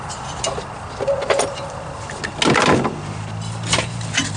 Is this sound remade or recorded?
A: recorded